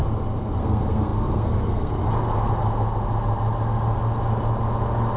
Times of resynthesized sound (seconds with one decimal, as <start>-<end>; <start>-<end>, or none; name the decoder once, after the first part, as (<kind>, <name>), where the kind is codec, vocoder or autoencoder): 0.6-2.0 (codec, SNAC)